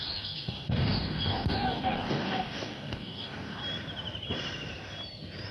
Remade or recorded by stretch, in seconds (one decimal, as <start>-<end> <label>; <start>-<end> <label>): 0.0-3.6 remade; 3.6-5.5 recorded